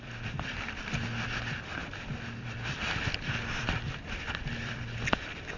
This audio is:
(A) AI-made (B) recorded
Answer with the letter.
B